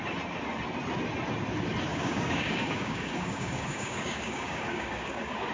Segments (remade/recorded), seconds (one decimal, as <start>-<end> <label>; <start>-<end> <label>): 0.0-1.9 recorded; 1.9-5.5 remade